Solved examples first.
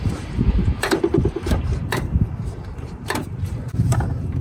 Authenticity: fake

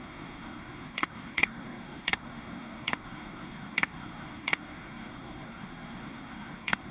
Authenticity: fake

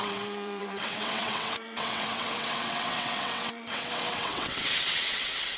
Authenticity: fake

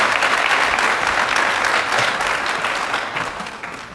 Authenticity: real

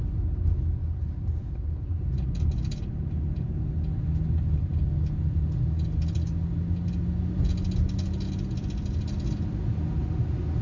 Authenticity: real